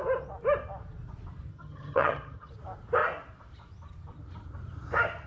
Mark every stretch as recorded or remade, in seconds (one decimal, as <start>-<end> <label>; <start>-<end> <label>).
0.0-1.5 recorded; 1.5-2.5 remade; 2.5-5.3 recorded